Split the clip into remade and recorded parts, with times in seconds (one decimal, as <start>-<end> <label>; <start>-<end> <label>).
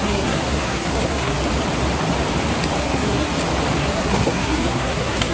0.0-1.4 remade; 1.4-2.8 recorded; 2.8-3.3 remade; 3.3-3.8 recorded; 3.8-5.3 remade